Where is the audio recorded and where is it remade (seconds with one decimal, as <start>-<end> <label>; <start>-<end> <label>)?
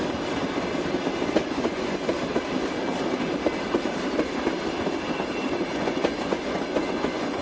0.0-1.4 recorded; 1.4-2.2 remade; 2.2-5.7 recorded; 5.7-7.4 remade